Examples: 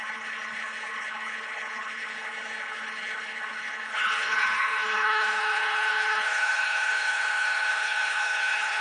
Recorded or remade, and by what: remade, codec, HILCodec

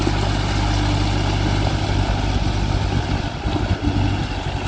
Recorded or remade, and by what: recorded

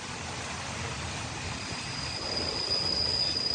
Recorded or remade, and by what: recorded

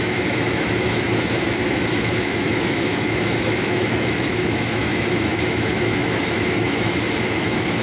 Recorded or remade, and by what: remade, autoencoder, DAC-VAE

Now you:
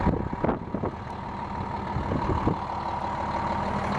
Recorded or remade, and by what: recorded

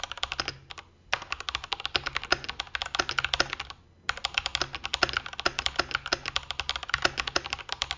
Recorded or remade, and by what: recorded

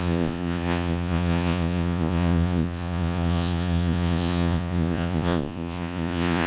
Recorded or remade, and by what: remade, vocoder, Vocos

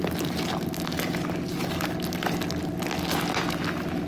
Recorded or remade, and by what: recorded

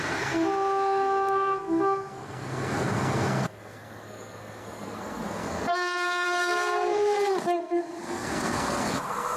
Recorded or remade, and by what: remade, codec, SNAC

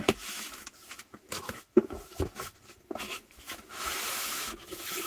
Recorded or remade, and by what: remade, autoencoder, DAC-VAE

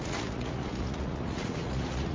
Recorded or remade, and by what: remade, vocoder, Vocos